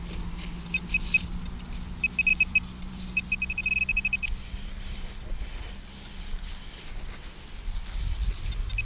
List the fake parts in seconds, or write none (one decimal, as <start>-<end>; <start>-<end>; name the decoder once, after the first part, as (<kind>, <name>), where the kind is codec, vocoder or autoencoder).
2.3-7.4 (vocoder, BigVGAN v2)

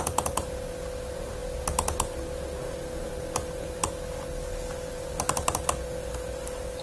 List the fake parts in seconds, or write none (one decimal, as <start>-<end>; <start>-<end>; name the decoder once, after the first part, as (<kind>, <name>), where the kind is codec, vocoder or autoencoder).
none

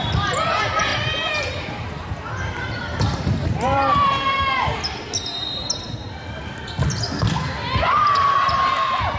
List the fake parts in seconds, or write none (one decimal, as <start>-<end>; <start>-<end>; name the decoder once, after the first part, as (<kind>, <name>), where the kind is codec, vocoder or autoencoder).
0.9-4.1 (vocoder, BigVGAN v2)

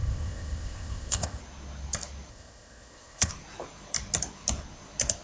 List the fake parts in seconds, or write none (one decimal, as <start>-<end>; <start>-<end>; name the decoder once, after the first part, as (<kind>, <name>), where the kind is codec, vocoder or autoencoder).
0.0-1.4 (codec, ZipCodec); 2.3-3.3

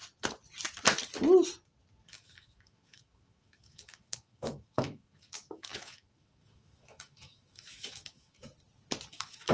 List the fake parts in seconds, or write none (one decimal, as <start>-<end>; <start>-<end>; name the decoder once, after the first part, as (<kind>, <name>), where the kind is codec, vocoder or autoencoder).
2.1-8.5 (autoencoder, DAC-VAE); 9.1-9.5

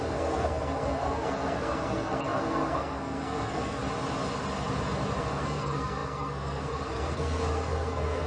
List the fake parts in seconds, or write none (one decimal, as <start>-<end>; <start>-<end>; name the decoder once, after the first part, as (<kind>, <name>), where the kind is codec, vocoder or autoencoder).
0.0-3.8 (codec, SNAC); 5.2-8.3

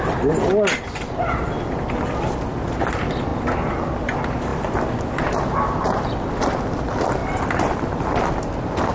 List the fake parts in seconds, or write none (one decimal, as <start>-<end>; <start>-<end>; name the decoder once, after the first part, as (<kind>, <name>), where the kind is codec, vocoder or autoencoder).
none